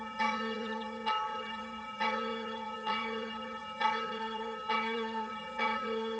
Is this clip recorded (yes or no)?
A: no